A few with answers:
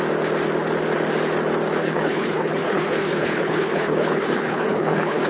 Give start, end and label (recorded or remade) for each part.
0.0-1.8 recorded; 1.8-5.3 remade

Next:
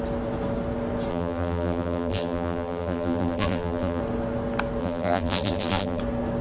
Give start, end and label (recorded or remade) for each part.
0.0-1.1 recorded; 1.1-4.0 remade; 4.0-4.8 recorded; 4.8-6.0 remade; 6.0-6.4 recorded

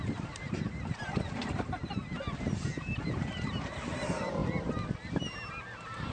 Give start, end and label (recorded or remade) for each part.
0.0-2.0 remade; 2.0-3.3 recorded; 3.3-4.4 remade; 4.4-6.1 recorded